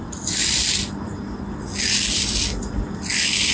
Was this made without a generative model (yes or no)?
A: yes